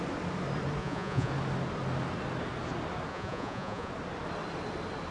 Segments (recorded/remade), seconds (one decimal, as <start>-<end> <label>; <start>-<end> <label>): 0.0-0.8 recorded; 0.8-1.3 remade; 1.3-3.1 recorded; 3.1-3.9 remade; 3.9-5.1 recorded